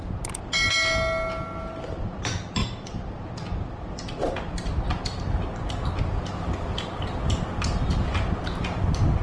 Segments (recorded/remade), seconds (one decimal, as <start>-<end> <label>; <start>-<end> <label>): 0.0-9.2 recorded